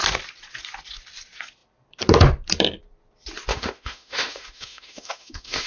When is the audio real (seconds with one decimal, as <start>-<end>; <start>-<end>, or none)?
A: 0.0-3.5